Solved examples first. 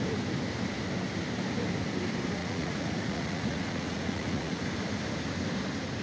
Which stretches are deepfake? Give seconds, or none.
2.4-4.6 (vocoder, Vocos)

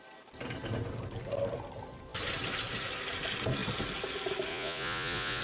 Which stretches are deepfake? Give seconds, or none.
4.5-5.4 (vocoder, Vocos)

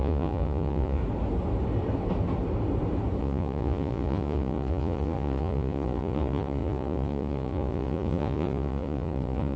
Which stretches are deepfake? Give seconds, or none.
0.0-1.0 (vocoder, Vocos); 3.2-9.6